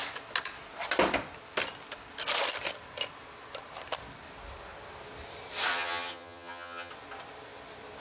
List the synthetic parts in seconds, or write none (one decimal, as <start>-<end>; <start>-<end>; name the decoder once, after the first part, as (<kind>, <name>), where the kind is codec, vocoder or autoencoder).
5.7-6.9 (vocoder, HiFi-GAN)